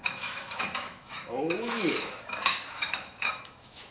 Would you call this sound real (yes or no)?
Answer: no